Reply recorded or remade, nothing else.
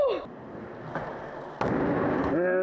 recorded